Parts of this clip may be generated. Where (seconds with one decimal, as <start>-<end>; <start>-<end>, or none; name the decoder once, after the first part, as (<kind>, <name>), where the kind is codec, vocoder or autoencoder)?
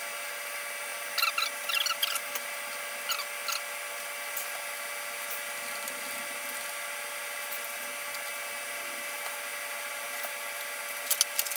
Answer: none